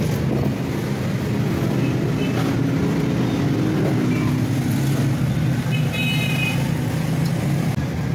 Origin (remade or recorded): recorded